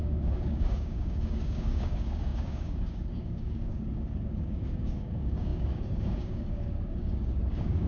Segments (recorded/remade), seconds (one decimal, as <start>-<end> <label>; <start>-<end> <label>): 0.0-7.9 remade